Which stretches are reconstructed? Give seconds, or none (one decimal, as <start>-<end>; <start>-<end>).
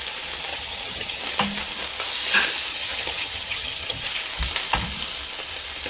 0.5-1.2; 2.7-4.1